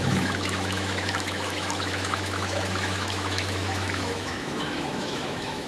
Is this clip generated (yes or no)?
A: yes